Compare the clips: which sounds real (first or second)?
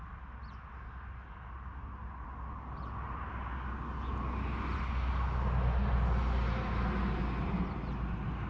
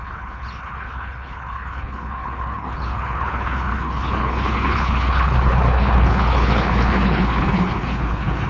first